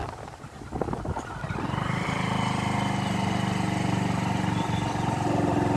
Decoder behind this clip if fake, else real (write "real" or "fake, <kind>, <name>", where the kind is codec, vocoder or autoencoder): real